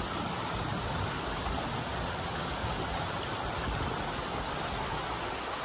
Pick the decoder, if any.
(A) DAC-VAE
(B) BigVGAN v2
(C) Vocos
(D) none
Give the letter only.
D